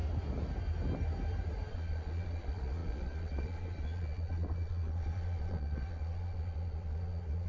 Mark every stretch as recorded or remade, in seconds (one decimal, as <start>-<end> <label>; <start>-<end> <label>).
0.0-1.7 recorded; 1.7-7.5 remade